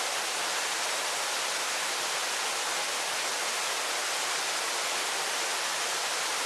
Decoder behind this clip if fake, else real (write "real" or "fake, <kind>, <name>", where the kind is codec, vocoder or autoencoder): real